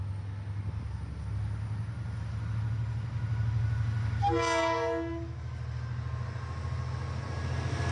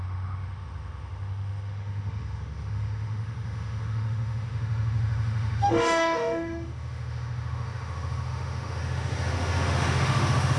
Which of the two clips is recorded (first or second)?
first